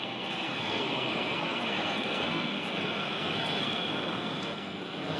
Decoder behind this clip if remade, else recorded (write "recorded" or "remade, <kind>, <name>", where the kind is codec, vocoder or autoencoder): remade, codec, SNAC